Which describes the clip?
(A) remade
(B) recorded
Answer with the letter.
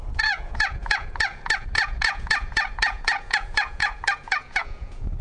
A